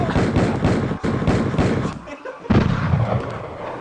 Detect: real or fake real